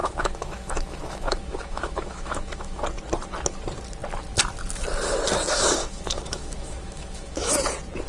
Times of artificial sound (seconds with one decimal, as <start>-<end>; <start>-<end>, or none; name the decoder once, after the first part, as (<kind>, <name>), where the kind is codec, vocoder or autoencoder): 0.0-2.8 (autoencoder, DAC-VAE); 5.8-7.5